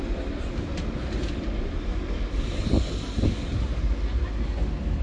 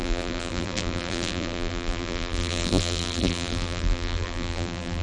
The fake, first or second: second